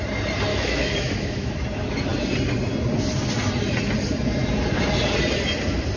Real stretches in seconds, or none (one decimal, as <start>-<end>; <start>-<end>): 0.0-0.5; 1.5-6.0

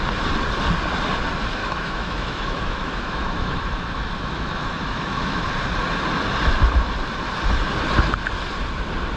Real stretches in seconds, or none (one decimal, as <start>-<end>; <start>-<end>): 0.0-1.6; 5.5-9.2